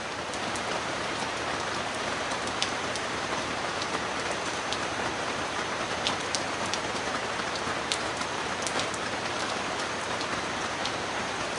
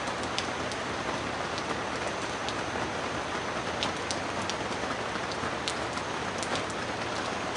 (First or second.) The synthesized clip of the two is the first